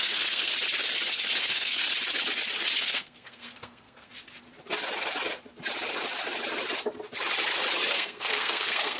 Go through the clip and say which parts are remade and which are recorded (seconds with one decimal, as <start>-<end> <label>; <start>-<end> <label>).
0.0-0.5 remade; 0.5-1.4 recorded; 1.4-1.8 remade; 1.8-2.8 recorded; 2.8-4.1 remade; 4.1-7.9 recorded; 7.9-9.0 remade